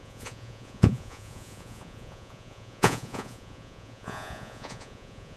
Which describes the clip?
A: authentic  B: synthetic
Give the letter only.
B